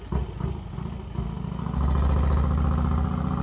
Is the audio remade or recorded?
recorded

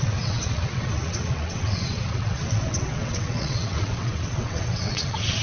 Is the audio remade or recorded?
remade